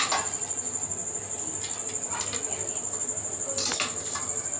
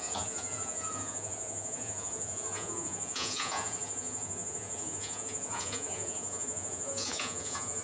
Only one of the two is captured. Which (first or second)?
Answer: first